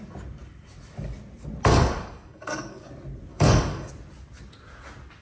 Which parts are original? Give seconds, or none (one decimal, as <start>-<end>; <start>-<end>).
0.0-1.7; 2.9-3.3; 3.9-5.2